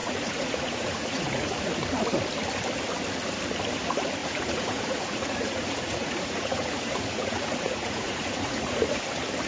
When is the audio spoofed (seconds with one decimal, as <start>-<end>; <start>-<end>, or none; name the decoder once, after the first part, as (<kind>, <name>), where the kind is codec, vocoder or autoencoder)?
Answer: 0.0-1.7 (vocoder, Vocos); 4.2-9.0